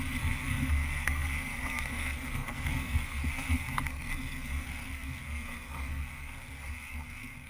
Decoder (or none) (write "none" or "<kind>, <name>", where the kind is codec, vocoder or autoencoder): codec, SNAC